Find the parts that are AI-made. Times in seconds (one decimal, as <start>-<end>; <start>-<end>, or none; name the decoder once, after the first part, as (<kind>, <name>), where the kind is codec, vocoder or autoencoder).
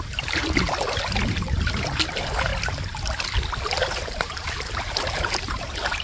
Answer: 0.0-0.4 (vocoder, BigVGAN v2); 1.3-2.5; 3.9-6.0